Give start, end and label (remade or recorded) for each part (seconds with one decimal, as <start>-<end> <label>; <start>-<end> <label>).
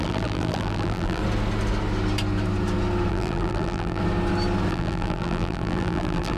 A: 0.0-1.2 remade; 1.2-3.1 recorded; 3.1-4.0 remade; 4.0-4.7 recorded; 4.7-6.4 remade